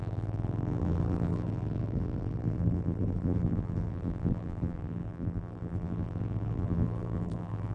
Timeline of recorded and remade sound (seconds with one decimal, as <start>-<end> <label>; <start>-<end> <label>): 0.0-7.7 remade